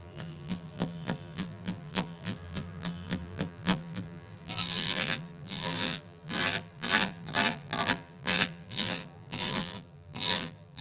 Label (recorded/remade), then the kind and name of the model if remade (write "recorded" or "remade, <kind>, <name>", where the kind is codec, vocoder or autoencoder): remade, vocoder, BigVGAN v2